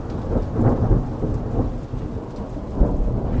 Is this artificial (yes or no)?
no